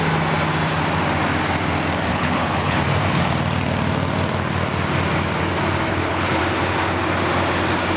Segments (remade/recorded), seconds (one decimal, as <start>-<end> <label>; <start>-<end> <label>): 0.0-2.1 recorded; 2.1-2.8 remade; 2.8-5.9 recorded; 5.9-6.4 remade; 6.4-8.0 recorded